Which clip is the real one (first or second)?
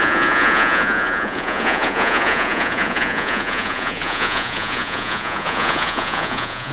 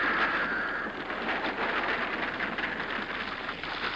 second